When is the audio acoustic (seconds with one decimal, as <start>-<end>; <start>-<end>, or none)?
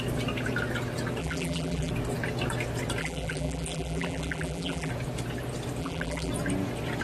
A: 0.0-1.2; 1.9-3.0; 4.9-5.8; 6.3-7.0